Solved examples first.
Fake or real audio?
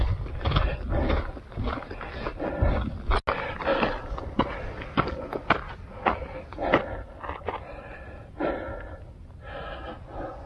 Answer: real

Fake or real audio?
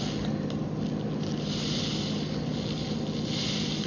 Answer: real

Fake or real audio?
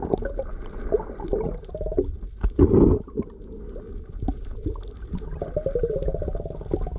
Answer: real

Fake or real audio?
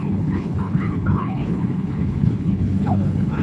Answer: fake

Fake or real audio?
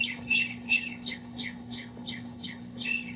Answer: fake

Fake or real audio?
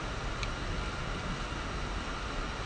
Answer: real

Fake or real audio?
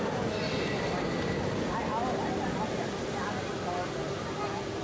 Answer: real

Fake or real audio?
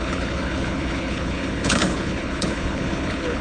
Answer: fake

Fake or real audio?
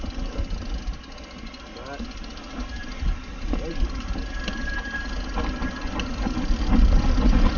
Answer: real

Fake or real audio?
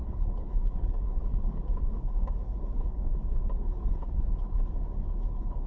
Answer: fake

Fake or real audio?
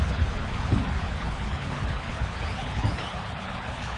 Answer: fake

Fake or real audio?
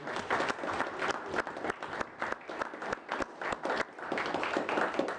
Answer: real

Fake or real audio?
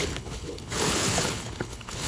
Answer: fake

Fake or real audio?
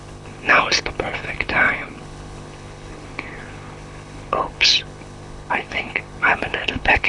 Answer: fake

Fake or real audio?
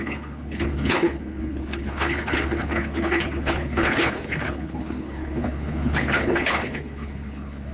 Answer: fake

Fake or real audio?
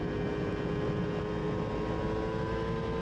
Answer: real